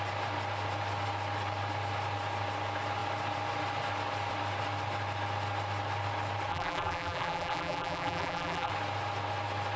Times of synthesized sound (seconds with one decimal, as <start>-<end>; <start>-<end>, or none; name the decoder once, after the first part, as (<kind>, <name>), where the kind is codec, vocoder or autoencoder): 6.5-8.7 (vocoder, BigVGAN v2)